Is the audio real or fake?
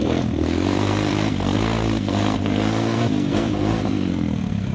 fake